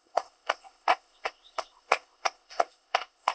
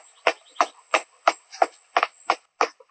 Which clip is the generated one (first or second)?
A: first